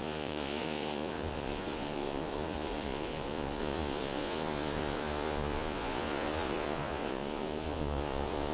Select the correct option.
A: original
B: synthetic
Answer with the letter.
B